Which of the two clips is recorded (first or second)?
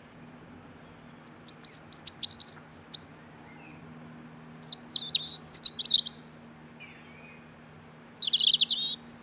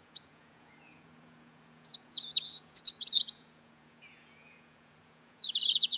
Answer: first